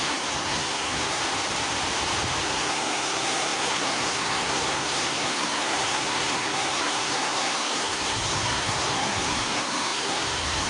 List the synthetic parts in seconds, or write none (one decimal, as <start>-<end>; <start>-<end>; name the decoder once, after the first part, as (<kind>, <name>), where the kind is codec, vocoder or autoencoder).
0.0-1.2 (codec, SNAC); 2.4-10.7